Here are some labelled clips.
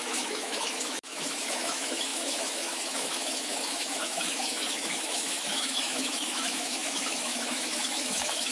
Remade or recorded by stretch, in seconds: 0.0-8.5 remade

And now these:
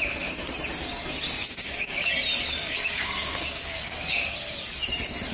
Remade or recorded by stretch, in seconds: 0.0-1.4 recorded; 1.4-2.1 remade; 2.1-2.6 recorded; 2.6-4.3 remade; 4.3-5.3 recorded

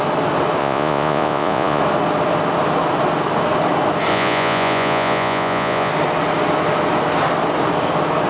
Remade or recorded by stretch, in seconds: 0.0-0.6 recorded; 0.6-1.8 remade; 1.8-4.1 recorded; 4.1-5.9 remade; 5.9-8.3 recorded